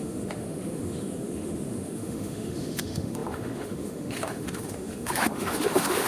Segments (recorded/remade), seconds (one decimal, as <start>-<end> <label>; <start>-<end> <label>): 0.0-6.1 remade